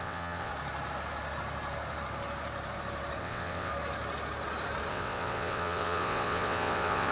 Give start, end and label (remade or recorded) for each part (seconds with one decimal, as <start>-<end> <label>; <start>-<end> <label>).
0.0-0.5 remade; 0.5-3.2 recorded; 3.2-3.7 remade; 3.7-4.9 recorded; 4.9-7.1 remade